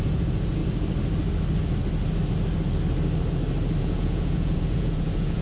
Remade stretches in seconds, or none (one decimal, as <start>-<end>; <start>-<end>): 0.0-0.6; 3.8-5.4

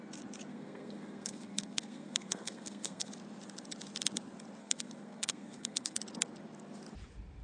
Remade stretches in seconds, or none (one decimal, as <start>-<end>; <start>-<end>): 0.5-3.1; 4.6-6.0

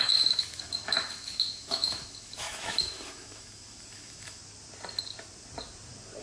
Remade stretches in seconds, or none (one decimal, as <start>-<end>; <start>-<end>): 0.0-4.4

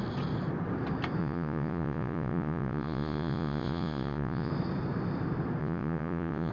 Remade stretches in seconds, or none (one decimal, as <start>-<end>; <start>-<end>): 1.2-4.5; 5.6-6.5

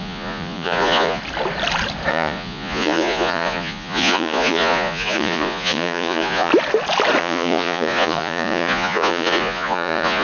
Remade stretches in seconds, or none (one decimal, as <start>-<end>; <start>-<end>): 0.0-1.2; 2.1-6.5; 7.2-10.2